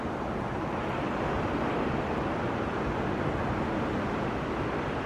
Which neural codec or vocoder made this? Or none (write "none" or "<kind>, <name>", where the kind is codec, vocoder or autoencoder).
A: none